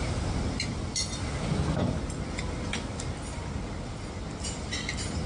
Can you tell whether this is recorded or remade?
recorded